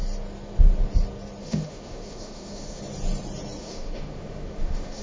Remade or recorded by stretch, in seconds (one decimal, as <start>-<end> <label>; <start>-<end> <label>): 0.0-1.4 recorded; 1.4-2.8 remade; 2.8-3.6 recorded; 3.6-5.0 remade